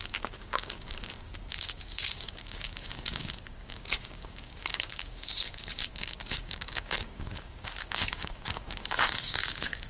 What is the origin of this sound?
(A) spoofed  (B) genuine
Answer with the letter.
A